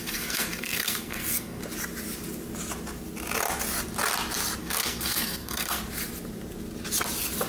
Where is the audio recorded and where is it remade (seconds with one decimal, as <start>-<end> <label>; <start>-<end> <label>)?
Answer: 0.0-1.6 remade; 1.6-4.6 recorded; 4.6-5.8 remade; 5.8-7.5 recorded

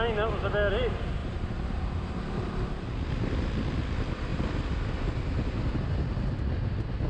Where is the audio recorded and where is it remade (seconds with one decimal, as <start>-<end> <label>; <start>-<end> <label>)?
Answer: 0.0-1.2 recorded; 1.2-3.1 remade; 3.1-7.1 recorded

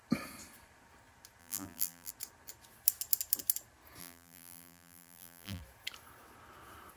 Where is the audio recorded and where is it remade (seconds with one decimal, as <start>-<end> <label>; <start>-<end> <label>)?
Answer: 0.0-1.4 recorded; 1.4-2.1 remade; 2.1-4.0 recorded; 4.0-5.6 remade; 5.6-7.0 recorded

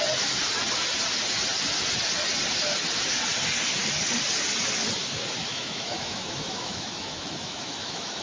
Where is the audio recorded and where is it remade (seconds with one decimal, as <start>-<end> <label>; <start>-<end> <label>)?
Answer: 0.0-5.4 recorded; 5.4-8.2 remade

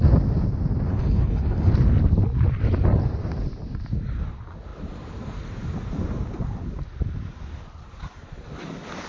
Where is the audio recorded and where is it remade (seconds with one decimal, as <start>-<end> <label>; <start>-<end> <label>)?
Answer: 0.0-0.9 recorded; 0.9-1.7 remade; 1.7-9.1 recorded

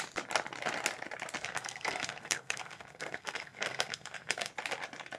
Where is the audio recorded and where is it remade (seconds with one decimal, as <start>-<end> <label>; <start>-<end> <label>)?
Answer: 0.0-1.4 recorded; 1.4-4.5 remade; 4.5-5.2 recorded

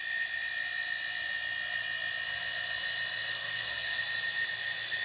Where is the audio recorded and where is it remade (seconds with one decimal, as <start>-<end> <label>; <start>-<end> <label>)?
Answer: 0.0-3.3 recorded; 3.3-4.0 remade; 4.0-5.0 recorded